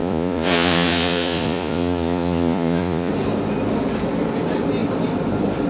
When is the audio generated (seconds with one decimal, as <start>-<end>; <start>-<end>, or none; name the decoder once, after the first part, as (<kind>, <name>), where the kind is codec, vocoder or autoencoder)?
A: 0.0-3.1 (vocoder, Vocos)